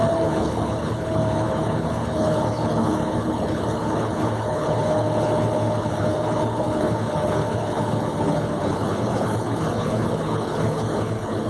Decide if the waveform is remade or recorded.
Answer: remade